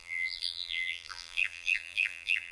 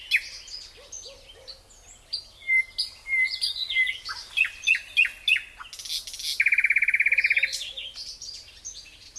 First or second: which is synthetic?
first